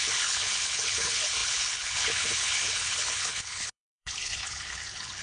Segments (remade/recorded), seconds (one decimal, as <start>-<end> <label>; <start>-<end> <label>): 0.0-5.2 remade